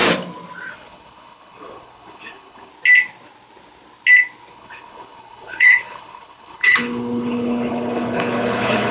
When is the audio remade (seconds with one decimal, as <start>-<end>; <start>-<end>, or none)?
0.7-2.7; 4.5-8.9